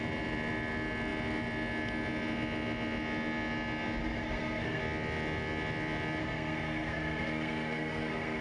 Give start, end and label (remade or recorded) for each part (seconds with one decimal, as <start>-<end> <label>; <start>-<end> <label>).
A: 0.0-4.0 recorded; 4.0-4.8 remade; 4.8-6.2 recorded; 6.2-8.4 remade